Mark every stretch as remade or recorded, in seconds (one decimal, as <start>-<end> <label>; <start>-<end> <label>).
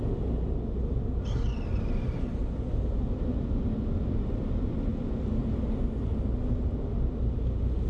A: 0.0-7.9 recorded